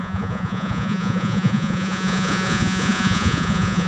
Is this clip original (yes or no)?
no